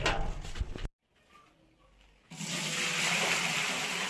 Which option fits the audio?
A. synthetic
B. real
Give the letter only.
B